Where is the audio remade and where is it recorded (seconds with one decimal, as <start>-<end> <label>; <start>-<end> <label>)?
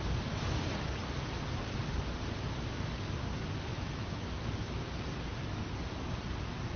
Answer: 0.0-3.7 recorded; 3.7-4.9 remade; 4.9-6.8 recorded